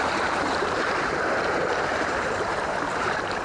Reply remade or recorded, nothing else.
remade